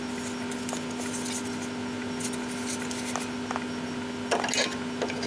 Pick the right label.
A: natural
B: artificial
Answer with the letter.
A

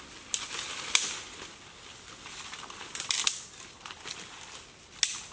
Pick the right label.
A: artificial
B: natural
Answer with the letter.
B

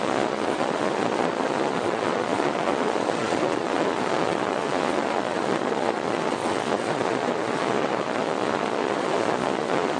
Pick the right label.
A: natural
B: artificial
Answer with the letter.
B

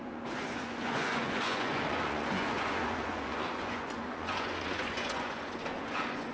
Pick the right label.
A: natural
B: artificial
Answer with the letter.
B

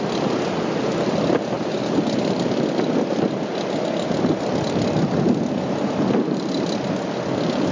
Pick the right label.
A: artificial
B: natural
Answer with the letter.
B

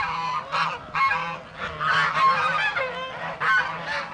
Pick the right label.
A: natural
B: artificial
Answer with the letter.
A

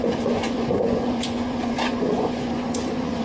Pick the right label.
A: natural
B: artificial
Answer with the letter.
B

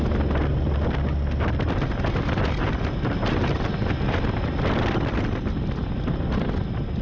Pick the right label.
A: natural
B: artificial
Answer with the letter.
A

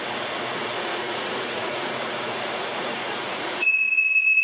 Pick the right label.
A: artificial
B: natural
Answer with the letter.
A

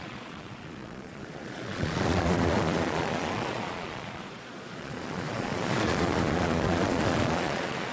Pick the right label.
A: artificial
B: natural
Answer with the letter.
A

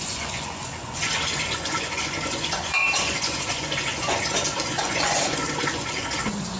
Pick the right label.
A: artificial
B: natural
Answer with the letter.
A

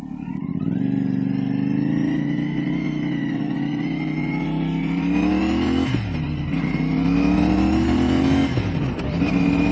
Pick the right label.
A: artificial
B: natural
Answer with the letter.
B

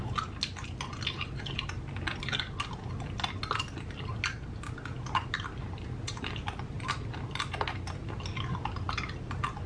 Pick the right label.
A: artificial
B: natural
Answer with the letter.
B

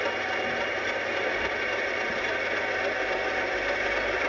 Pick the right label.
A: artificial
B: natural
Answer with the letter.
B